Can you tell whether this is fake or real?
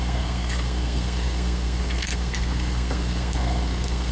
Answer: fake